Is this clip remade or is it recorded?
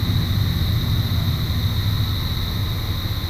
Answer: recorded